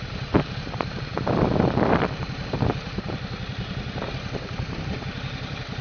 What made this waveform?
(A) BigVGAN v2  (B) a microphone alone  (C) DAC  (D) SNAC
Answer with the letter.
A